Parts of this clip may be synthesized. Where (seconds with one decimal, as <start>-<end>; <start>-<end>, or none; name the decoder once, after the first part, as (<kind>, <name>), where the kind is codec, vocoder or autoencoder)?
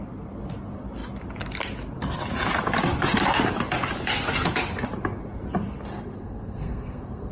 5.9-7.3 (codec, SNAC)